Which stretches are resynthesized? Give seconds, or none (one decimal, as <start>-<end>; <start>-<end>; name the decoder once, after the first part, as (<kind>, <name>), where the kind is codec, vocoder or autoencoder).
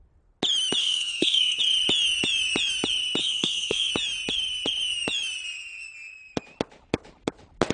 0.8-1.6 (codec, SNAC); 3.2-3.9